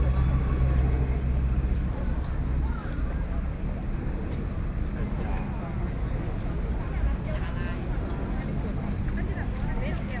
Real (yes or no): yes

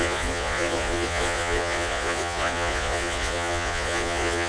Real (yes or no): no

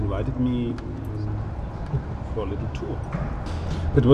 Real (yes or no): yes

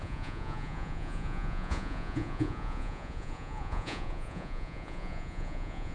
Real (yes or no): no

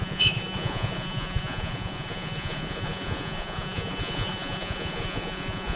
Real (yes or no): no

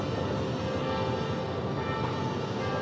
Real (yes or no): yes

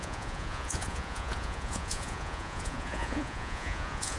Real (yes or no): no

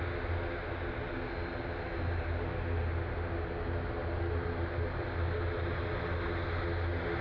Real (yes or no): yes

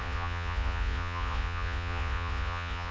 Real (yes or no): no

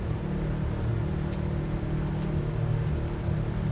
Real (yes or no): yes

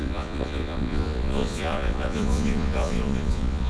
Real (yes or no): no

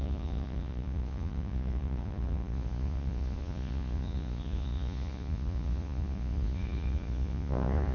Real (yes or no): no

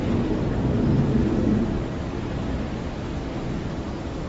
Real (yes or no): yes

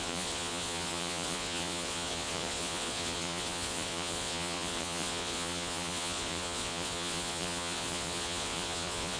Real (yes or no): no